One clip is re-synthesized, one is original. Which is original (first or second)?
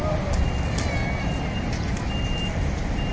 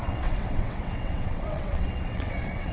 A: first